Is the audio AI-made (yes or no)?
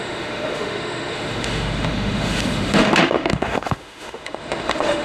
yes